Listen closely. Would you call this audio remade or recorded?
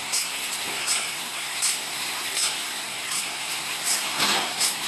remade